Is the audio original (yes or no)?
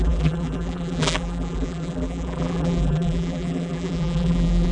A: no